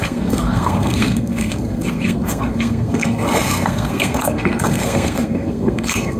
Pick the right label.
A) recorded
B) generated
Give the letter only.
B